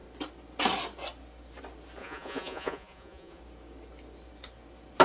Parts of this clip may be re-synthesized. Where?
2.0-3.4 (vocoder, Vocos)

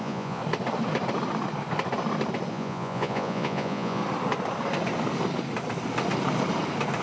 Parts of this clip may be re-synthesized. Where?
0.0-0.4 (vocoder, Vocos); 2.5-4.0

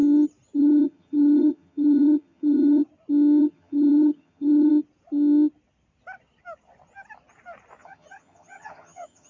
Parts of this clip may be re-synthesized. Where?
0.6-2.8 (vocoder, HiFi-GAN); 3.4-4.7; 7.8-9.3

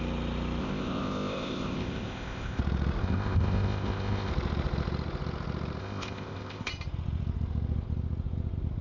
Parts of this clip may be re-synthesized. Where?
0.6-2.6 (codec, ZipCodec); 3.0-4.3; 5.8-6.7

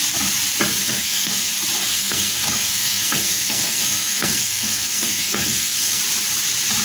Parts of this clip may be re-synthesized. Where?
0.8-1.5 (codec, SNAC); 1.9-6.0

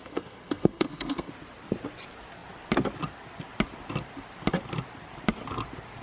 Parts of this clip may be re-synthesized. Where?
0.0-1.3 (codec, SNAC)

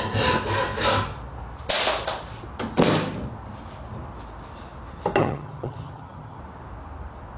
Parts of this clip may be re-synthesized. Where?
5.2-6.4 (vocoder, HiFi-GAN)

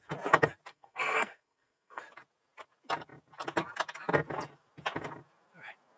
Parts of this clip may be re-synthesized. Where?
0.7-2.0 (codec, SNAC)